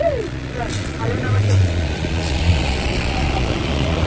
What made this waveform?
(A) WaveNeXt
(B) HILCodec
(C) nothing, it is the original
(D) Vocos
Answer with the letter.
D